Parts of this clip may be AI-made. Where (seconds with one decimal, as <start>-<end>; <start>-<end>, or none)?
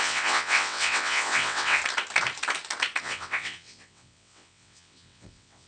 0.0-1.8; 3.0-5.7